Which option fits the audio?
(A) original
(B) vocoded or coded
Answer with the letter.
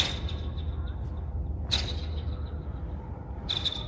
A